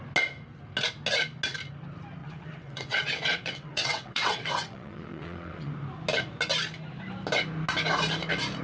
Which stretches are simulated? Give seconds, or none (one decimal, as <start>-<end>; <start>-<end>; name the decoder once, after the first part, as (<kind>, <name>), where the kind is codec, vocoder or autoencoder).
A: 2.2-5.7 (vocoder, WaveNeXt)